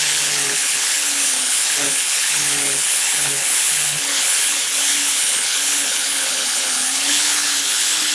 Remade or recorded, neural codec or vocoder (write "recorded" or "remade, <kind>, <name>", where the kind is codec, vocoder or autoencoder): remade, codec, HILCodec